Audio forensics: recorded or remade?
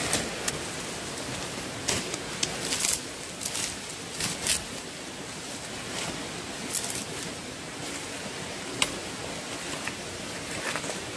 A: recorded